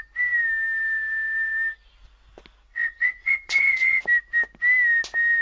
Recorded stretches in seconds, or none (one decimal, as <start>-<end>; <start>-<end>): 0.0-2.7; 4.0-5.4